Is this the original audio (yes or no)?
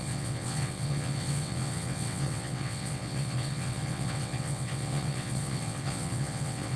no